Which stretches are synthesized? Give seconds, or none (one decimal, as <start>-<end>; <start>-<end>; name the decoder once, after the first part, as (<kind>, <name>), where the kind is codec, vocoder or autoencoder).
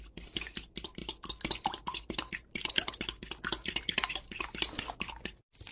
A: none